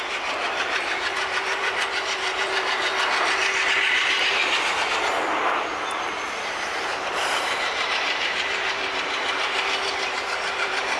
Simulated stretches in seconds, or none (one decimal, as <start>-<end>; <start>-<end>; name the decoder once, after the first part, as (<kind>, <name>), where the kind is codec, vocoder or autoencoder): 0.0-2.9 (vocoder, BigVGAN v2); 3.7-11.0